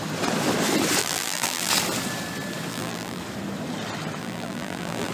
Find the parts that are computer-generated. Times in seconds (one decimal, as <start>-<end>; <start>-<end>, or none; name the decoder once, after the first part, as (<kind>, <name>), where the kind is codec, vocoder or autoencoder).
1.0-1.7 (vocoder, BigVGAN v2); 2.7-3.2; 4.2-5.1